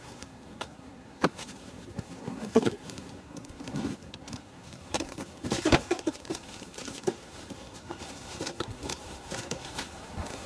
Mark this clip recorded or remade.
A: remade